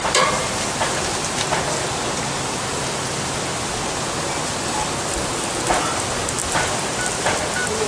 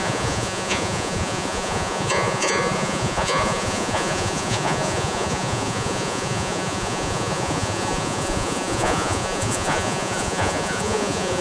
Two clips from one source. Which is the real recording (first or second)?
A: first